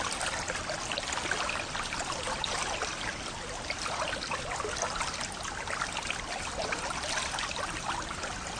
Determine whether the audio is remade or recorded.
recorded